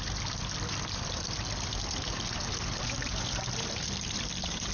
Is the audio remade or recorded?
remade